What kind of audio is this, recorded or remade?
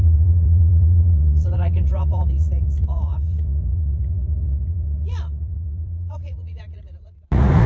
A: remade